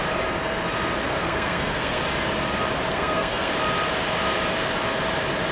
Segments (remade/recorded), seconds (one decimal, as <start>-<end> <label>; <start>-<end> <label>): 0.0-1.2 recorded; 1.2-2.0 remade; 2.0-2.9 recorded; 2.9-3.5 remade; 3.5-5.5 recorded